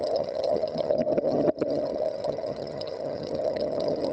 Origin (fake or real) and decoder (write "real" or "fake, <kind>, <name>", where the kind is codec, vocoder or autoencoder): fake, vocoder, HiFi-GAN